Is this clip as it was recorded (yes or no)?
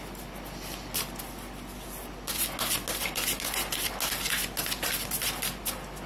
yes